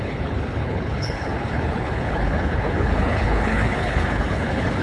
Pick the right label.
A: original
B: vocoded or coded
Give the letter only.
B